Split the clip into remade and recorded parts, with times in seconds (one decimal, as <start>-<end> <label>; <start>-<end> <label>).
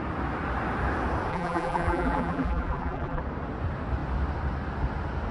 0.0-1.3 recorded; 1.3-3.2 remade; 3.2-5.3 recorded